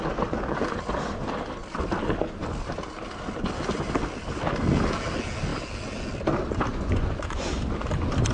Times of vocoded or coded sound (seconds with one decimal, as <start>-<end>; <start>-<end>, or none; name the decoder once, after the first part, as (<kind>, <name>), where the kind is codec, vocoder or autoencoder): 6.7-7.4 (vocoder, Vocos)